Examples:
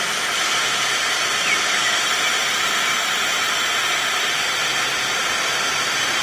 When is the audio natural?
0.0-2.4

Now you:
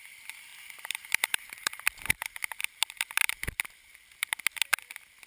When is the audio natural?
0.0-0.5; 1.8-5.3

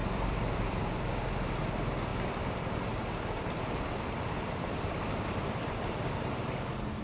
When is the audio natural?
0.9-2.1; 6.3-7.0

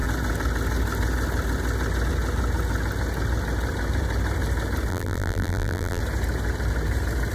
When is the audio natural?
0.0-4.9; 6.0-7.3

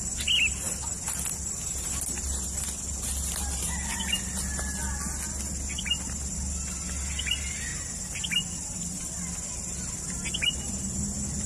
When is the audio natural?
0.0-7.7; 9.1-11.5